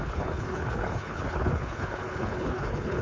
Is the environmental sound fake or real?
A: fake